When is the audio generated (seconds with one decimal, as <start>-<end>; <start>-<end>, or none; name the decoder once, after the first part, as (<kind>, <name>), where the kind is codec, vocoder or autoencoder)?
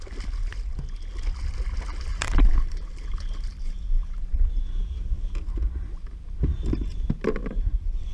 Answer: 2.1-4.0 (vocoder, BigVGAN v2); 7.4-8.1